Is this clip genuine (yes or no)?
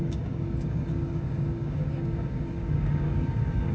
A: no